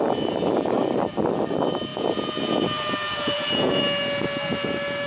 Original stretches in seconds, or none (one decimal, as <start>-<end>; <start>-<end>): 0.0-1.9; 3.8-5.1